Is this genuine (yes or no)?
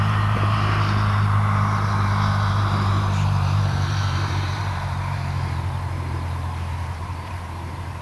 no